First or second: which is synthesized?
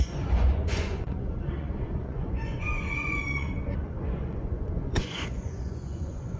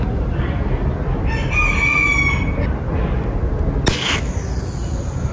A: first